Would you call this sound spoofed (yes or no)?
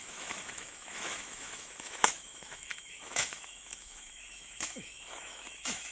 yes